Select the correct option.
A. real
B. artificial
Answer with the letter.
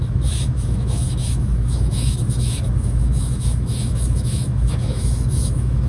B